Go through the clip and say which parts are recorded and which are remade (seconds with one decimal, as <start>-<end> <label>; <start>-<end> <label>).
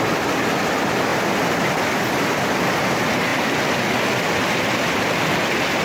0.0-5.8 recorded